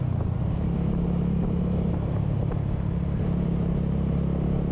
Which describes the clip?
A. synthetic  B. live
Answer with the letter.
B